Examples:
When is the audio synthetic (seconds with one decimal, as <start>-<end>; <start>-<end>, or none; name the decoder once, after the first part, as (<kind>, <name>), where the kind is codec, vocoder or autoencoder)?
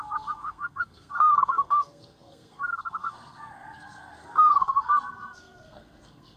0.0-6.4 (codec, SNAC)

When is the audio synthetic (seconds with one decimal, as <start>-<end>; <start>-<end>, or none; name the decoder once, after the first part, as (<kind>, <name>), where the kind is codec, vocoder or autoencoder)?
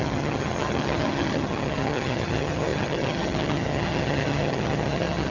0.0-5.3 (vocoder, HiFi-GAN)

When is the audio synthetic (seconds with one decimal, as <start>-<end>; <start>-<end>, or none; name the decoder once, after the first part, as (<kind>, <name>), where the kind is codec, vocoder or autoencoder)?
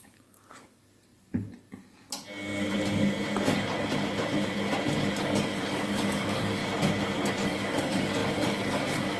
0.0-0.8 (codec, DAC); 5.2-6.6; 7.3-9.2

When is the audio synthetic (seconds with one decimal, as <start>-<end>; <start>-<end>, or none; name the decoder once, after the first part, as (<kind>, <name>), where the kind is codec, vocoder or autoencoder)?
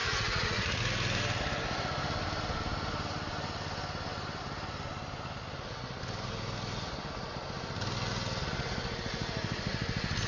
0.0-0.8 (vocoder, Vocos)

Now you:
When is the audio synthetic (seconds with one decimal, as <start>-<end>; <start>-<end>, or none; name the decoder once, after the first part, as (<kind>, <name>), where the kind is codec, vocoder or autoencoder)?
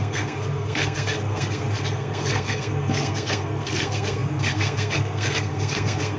0.0-6.2 (codec, SNAC)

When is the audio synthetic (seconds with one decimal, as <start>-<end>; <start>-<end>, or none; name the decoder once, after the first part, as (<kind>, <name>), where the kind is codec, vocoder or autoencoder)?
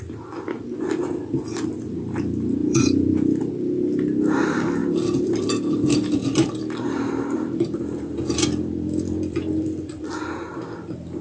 1.7-2.2 (vocoder, BigVGAN v2); 2.6-3.5; 4.8-10.0